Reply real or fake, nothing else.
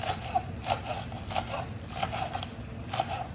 real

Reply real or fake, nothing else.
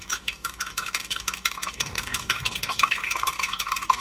fake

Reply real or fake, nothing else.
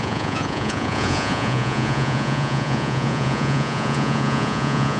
fake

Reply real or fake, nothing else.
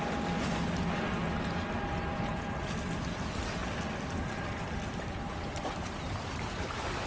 real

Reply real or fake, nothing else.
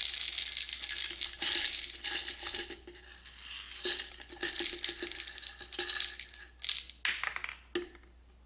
real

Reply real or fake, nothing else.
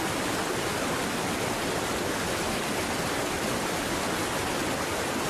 real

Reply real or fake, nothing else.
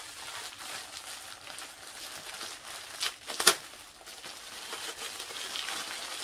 real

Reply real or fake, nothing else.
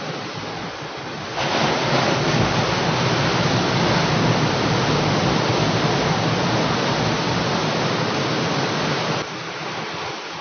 real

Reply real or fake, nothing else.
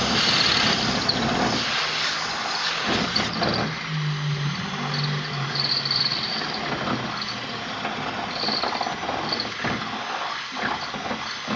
real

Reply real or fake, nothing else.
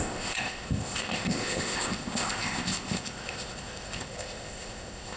fake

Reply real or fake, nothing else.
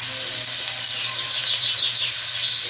real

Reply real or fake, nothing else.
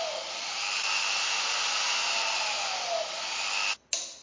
real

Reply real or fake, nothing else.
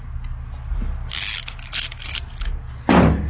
real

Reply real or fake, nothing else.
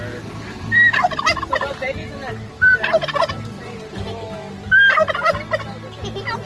real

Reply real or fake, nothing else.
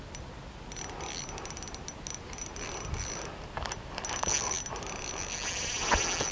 real